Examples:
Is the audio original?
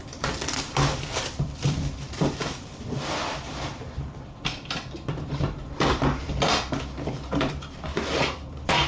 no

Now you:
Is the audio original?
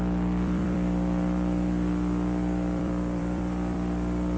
no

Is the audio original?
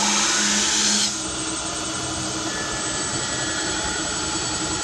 yes